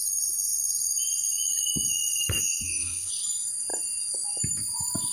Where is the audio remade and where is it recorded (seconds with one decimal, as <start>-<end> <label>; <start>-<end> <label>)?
0.0-2.4 recorded; 2.4-3.1 remade; 3.1-5.1 recorded